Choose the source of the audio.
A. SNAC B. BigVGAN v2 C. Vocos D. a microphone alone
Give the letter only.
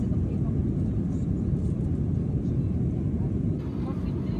B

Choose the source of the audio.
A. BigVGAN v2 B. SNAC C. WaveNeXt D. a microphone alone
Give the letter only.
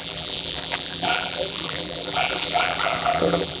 A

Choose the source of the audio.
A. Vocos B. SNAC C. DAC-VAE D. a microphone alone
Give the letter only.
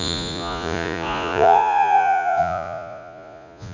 A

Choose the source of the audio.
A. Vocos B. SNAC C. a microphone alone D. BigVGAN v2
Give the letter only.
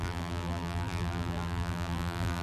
D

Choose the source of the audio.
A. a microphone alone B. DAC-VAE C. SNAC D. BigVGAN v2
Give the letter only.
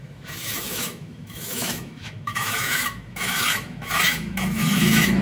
B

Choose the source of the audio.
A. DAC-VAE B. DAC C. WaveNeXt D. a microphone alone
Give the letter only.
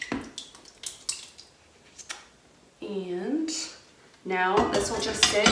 D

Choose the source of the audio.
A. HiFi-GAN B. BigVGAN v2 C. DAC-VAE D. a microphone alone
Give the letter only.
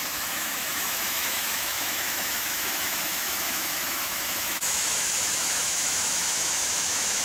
C